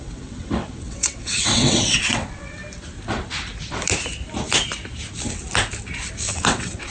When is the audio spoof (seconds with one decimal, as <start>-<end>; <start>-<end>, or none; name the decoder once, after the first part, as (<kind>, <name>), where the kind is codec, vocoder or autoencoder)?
0.0-2.6 (vocoder, WaveNeXt); 6.3-6.9